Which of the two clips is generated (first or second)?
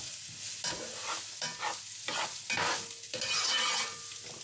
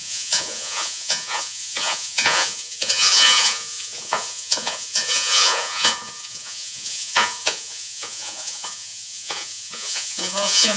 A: second